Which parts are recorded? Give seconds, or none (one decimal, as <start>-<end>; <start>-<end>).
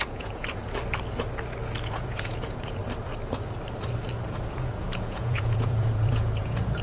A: 0.6-1.8; 2.8-4.3